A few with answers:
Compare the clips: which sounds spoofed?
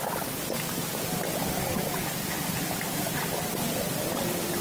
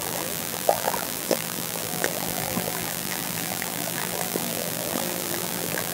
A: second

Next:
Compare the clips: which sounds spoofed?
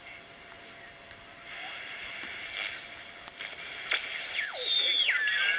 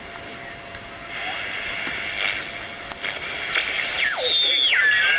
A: first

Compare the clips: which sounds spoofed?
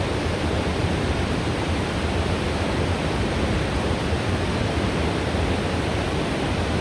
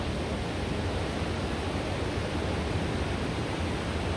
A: first